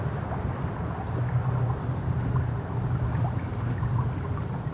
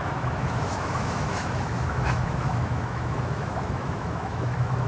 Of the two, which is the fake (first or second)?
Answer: second